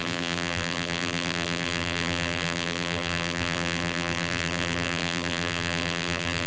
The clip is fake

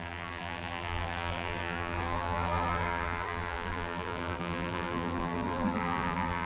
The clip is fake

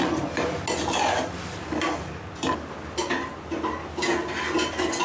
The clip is real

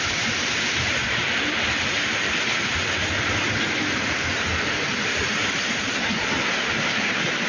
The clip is fake